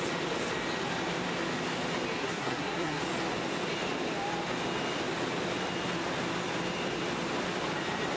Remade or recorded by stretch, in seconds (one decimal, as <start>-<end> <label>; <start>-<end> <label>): 0.0-2.2 recorded; 2.2-3.0 remade; 3.0-8.2 recorded